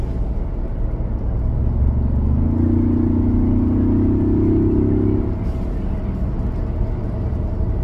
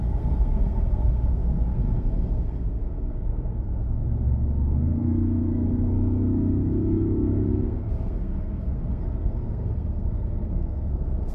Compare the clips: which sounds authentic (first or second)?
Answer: first